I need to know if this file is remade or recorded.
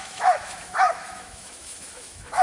remade